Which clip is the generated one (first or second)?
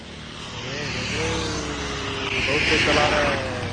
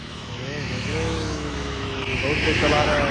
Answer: second